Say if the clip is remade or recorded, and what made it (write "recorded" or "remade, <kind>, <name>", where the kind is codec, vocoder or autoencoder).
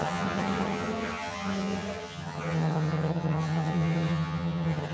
remade, vocoder, HiFi-GAN